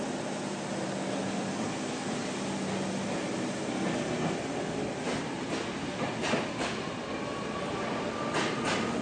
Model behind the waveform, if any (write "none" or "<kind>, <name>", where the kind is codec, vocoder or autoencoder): none